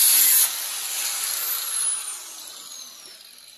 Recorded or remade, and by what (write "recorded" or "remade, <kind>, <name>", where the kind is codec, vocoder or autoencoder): recorded